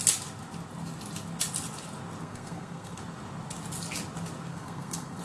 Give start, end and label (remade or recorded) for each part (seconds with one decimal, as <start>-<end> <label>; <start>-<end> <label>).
0.0-2.2 recorded; 2.2-3.0 remade; 3.0-4.5 recorded; 4.5-5.2 remade